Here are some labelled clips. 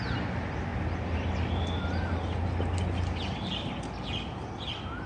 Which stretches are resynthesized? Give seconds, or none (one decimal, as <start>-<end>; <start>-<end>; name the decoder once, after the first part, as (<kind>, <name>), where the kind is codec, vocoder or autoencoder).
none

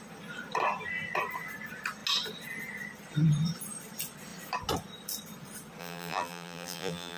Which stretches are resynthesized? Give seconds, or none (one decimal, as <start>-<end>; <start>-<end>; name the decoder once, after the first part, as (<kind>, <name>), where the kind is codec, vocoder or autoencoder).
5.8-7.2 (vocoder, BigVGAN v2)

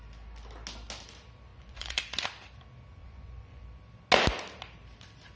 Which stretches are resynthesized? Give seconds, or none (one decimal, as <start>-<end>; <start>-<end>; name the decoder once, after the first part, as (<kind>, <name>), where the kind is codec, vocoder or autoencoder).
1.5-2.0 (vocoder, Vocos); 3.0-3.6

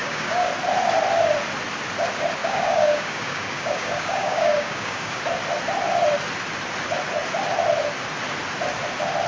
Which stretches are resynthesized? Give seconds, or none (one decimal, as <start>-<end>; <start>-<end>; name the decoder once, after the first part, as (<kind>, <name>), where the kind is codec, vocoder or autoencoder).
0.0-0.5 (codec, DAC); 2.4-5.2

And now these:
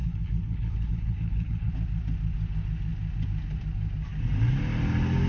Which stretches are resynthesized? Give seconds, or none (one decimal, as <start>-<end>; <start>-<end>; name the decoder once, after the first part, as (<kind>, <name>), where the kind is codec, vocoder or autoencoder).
0.0-1.7 (codec, HILCodec)

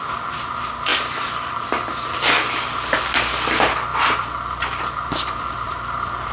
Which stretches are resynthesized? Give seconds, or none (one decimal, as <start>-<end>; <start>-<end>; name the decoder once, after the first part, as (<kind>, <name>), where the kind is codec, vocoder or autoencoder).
0.9-2.0 (vocoder, BigVGAN v2); 3.9-6.3

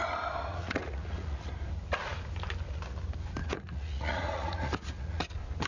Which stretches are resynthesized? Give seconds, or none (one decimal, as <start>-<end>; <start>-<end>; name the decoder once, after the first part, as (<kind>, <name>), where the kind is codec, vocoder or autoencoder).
0.5-1.5 (vocoder, Vocos); 3.4-5.3

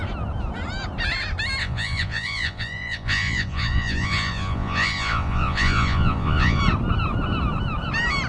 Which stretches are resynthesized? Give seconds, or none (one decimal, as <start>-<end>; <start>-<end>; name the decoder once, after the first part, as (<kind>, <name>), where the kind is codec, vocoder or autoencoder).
1.6-6.6 (vocoder, Vocos)